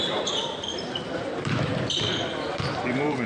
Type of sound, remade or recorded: remade